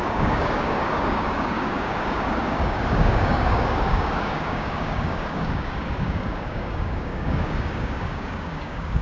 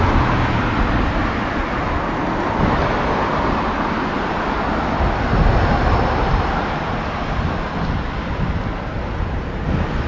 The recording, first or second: second